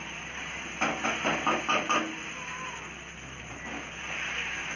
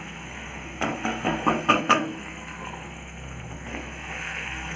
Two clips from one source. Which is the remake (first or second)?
second